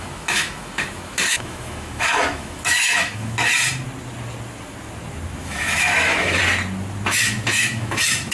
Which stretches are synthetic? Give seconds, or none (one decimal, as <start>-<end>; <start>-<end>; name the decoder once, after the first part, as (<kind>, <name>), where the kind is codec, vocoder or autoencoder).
0.0-3.5 (autoencoder, DAC-VAE); 5.4-6.4; 7.1-8.3